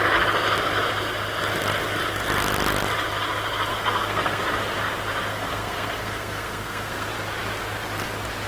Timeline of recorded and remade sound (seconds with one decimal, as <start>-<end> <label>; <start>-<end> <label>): 0.0-3.7 recorded; 3.7-4.4 remade; 4.4-5.3 recorded; 5.3-7.1 remade; 7.1-8.5 recorded